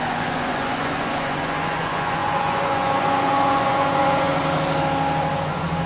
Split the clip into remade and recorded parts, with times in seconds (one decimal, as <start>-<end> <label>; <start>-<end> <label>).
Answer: 0.0-4.4 remade; 4.4-5.3 recorded; 5.3-5.9 remade

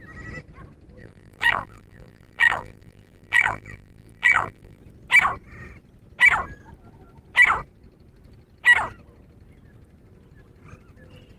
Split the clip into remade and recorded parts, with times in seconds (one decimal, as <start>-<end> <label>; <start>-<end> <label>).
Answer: 0.0-1.0 recorded; 1.0-4.8 remade; 4.8-11.4 recorded

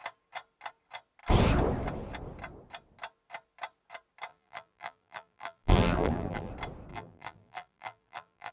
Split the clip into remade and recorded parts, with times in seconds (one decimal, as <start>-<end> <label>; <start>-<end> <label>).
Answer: 0.0-4.3 recorded; 4.3-6.5 remade; 6.5-6.9 recorded; 6.9-8.5 remade

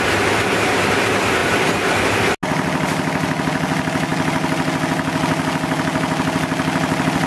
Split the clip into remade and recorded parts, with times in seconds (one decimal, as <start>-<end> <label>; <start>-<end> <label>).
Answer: 0.0-7.3 recorded

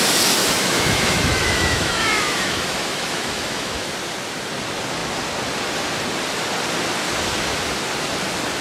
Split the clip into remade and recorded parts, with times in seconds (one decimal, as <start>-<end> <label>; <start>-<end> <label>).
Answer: 0.0-0.4 recorded; 0.4-3.9 remade; 3.9-8.6 recorded

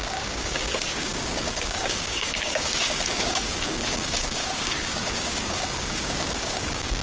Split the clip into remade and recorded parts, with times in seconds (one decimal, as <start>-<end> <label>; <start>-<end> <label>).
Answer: 0.0-7.0 remade

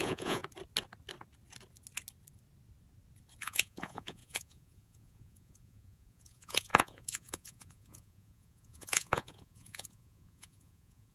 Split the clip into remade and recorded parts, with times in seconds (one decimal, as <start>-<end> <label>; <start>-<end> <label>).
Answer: 0.0-0.4 remade; 0.4-3.4 recorded; 3.4-11.1 remade

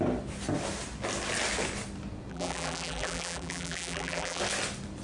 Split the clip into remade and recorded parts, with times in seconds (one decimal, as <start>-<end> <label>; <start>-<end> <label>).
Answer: 0.0-2.3 recorded; 2.3-4.4 remade; 4.4-5.0 recorded